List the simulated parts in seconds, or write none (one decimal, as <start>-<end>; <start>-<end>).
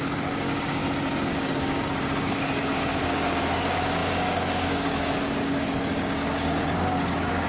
0.0-0.8; 1.3-7.5